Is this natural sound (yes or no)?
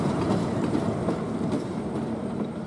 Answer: no